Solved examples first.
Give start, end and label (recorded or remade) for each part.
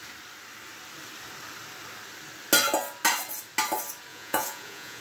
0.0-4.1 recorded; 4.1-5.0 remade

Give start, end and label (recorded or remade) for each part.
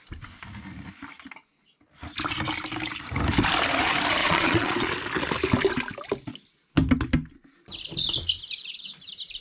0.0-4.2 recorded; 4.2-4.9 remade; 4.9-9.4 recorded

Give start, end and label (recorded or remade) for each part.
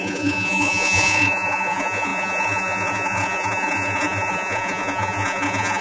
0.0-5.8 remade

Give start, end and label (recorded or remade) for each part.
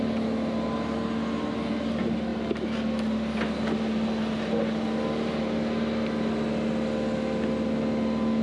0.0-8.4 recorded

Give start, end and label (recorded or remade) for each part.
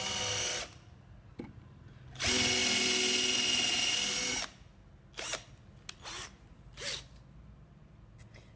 0.0-8.6 recorded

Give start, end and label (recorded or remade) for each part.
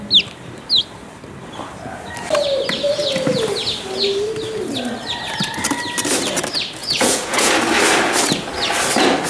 0.0-6.8 recorded; 6.8-7.5 remade; 7.5-9.3 recorded